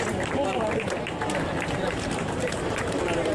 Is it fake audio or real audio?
fake